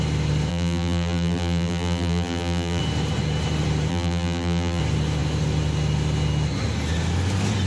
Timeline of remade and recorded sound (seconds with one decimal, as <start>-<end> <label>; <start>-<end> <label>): 0.0-0.5 recorded; 0.5-2.8 remade; 2.8-3.9 recorded; 3.9-4.8 remade; 4.8-7.7 recorded